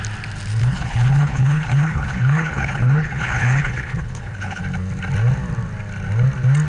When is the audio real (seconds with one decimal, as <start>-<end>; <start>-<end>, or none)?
0.0-0.6; 4.6-6.7

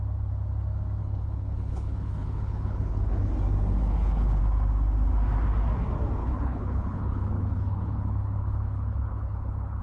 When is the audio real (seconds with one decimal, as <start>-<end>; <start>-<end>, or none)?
0.0-1.0; 3.3-3.8; 4.4-6.2

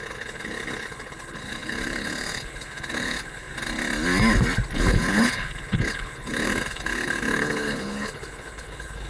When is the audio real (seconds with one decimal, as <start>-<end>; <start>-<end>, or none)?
3.5-4.8

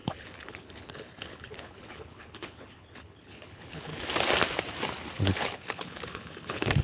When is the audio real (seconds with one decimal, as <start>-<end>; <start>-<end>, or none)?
3.9-5.2

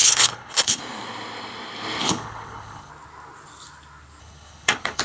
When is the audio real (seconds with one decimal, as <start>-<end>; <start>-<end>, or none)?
0.8-2.0; 2.9-4.2